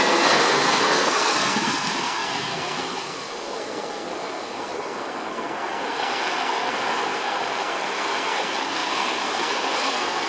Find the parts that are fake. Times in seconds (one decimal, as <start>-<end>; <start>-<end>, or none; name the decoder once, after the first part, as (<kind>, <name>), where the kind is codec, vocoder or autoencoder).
0.0-10.3 (codec, SNAC)